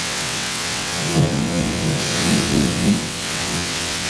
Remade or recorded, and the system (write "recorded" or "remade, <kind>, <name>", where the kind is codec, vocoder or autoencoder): remade, vocoder, WaveNeXt